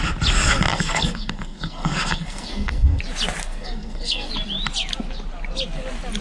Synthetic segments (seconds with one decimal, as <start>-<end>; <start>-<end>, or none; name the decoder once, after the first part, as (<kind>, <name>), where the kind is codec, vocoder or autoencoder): 0.7-3.0 (codec, SNAC); 3.4-4.3